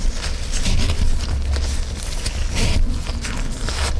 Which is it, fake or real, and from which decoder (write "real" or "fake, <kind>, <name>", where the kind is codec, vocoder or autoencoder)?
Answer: real